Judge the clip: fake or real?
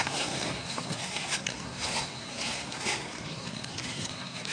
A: fake